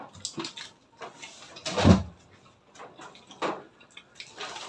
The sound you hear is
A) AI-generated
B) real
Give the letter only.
B